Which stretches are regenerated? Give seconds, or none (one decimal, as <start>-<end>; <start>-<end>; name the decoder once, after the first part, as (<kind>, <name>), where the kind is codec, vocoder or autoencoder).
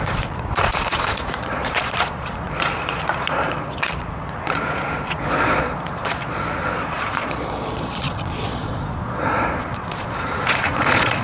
0.0-11.2 (vocoder, Vocos)